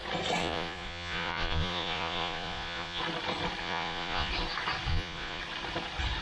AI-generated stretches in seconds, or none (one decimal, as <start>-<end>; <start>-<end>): 0.4-3.0; 3.6-4.3; 4.9-5.4